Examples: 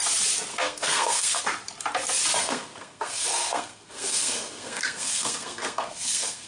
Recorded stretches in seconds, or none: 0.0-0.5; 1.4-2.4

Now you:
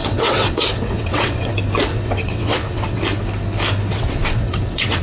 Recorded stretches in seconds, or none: 1.5-1.9; 3.0-3.9

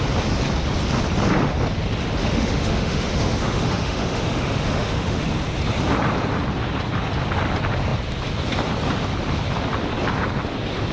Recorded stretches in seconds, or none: 0.0-2.2; 5.2-10.9

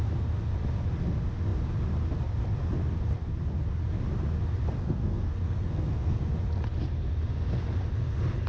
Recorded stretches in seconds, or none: 0.0-4.8; 6.2-8.5

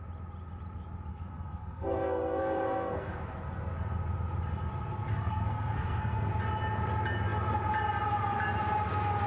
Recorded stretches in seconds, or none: 0.0-1.1; 3.1-5.1; 6.3-9.3

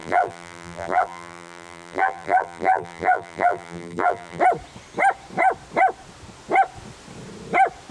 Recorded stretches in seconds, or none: 4.4-7.9

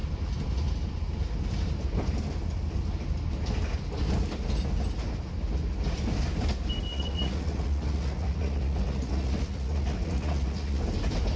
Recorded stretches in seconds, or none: 0.0-6.9; 10.8-11.4

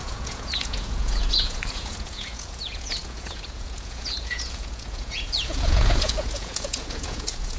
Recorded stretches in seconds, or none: none